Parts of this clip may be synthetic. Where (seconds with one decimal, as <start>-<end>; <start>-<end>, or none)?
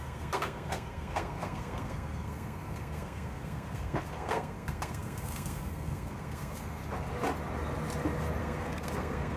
0.0-6.8; 8.4-9.4